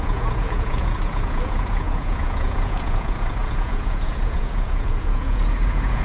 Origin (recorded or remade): remade